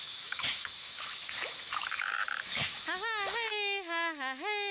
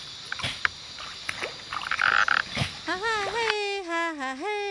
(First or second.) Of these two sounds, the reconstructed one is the first